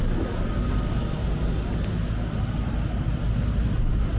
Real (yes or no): yes